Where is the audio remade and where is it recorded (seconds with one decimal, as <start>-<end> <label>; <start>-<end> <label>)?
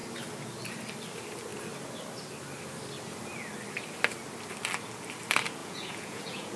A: 0.0-5.6 recorded; 5.6-6.6 remade